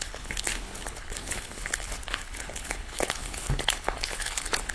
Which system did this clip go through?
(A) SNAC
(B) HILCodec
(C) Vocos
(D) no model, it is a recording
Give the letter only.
B